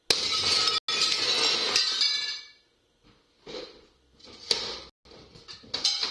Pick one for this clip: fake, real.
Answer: real